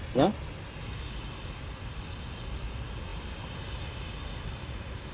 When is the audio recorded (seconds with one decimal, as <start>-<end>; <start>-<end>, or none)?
0.0-5.1